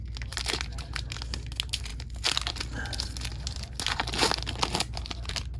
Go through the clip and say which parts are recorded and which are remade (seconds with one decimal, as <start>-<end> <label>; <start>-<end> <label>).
0.0-5.6 recorded